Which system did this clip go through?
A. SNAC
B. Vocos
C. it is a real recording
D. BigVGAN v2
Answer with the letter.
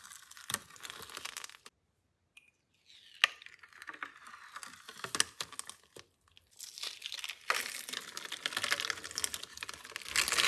C